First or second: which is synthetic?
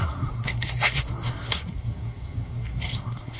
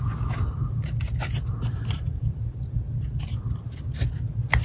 first